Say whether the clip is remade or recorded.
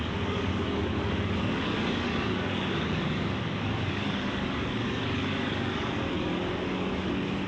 remade